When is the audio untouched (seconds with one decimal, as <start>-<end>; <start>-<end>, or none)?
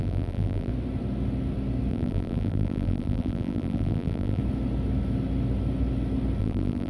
0.7-1.9; 4.4-6.4